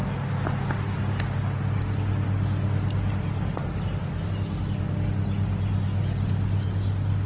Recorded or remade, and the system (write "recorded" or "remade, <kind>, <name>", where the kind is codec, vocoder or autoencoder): recorded